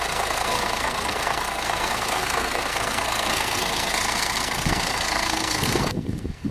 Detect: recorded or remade remade